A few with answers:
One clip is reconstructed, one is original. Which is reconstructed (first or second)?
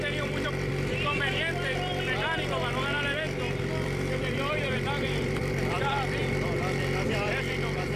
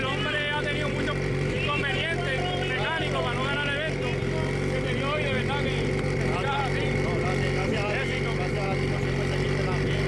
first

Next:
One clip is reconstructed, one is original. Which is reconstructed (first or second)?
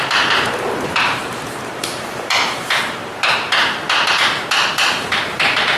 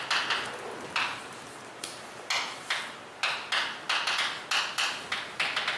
first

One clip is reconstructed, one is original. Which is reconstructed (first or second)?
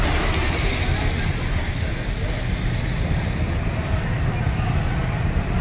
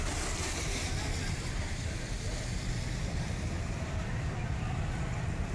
second